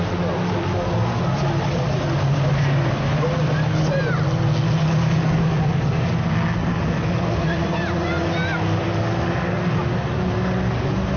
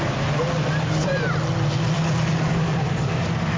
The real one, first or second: first